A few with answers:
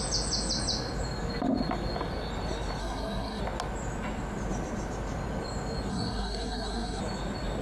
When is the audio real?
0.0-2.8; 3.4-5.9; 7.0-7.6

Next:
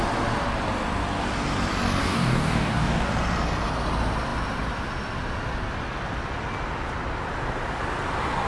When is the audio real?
0.0-2.0; 3.1-8.5

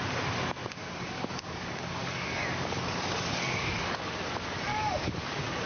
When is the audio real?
0.0-0.6; 4.0-4.7

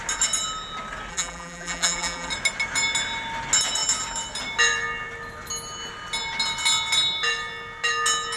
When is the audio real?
0.0-1.1; 2.3-8.4

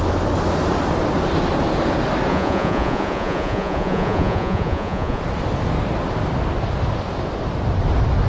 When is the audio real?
0.0-2.3; 5.2-8.3